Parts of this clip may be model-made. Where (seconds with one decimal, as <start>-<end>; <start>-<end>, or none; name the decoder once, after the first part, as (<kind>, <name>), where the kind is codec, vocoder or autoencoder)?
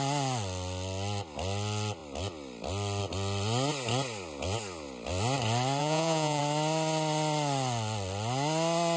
5.8-6.4 (vocoder, Vocos)